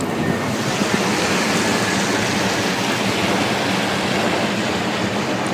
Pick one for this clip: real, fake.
real